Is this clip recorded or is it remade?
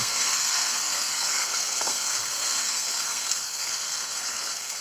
remade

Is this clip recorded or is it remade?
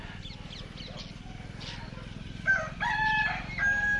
recorded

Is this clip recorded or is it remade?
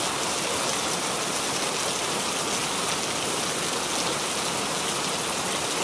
recorded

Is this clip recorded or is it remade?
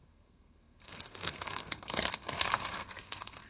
remade